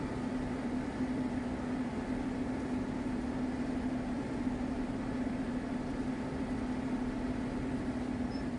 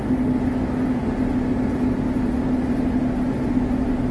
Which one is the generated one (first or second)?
first